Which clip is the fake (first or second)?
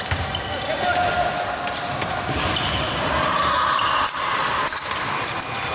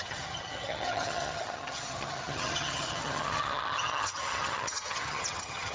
second